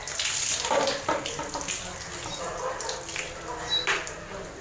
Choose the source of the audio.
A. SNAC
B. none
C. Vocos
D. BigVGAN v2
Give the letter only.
B